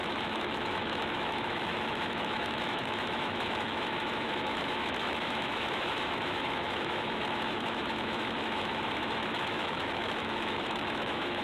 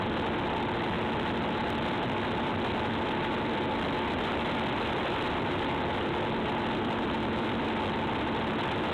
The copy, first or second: first